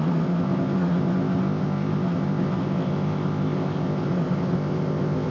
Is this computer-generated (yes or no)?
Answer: yes